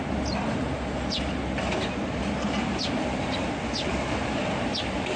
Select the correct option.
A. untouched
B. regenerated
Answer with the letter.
A